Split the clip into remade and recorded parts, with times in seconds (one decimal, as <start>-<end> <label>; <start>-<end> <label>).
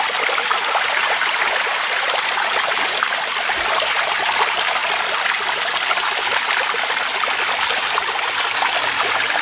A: 0.0-4.8 remade; 4.8-8.0 recorded; 8.0-9.4 remade